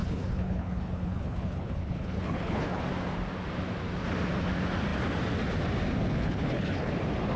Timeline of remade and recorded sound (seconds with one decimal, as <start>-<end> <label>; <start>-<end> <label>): 0.0-2.8 remade; 2.8-6.1 recorded; 6.1-6.9 remade; 6.9-7.4 recorded